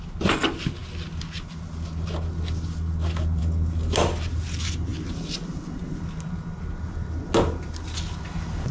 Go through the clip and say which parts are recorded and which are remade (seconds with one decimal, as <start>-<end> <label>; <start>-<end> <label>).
0.0-8.7 recorded

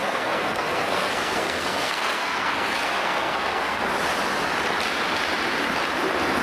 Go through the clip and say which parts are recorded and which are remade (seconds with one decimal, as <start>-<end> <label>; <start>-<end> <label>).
0.0-3.8 remade; 3.8-6.4 recorded

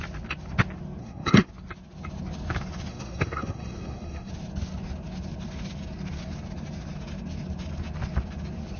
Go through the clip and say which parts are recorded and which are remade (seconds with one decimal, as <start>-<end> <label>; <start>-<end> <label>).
0.0-1.0 recorded; 1.0-1.5 remade; 1.5-2.9 recorded; 2.9-4.3 remade; 4.3-8.8 recorded

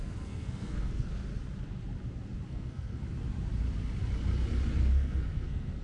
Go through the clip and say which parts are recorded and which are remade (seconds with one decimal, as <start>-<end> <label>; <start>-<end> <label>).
0.0-1.2 remade; 1.2-2.5 recorded; 2.5-3.0 remade; 3.0-4.8 recorded; 4.8-5.8 remade